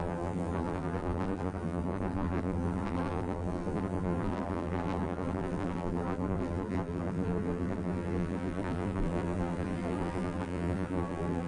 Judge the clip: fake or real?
fake